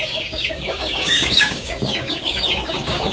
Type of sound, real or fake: fake